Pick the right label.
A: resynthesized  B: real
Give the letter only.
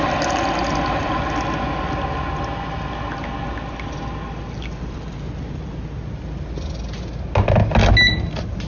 B